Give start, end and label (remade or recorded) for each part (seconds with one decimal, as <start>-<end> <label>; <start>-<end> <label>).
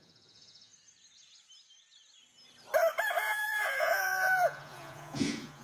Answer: 0.0-0.7 remade; 0.7-3.2 recorded; 3.2-5.6 remade